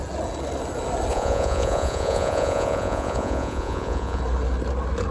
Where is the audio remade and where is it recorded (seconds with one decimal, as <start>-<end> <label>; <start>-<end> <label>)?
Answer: 0.0-1.1 recorded; 1.1-4.2 remade; 4.2-5.1 recorded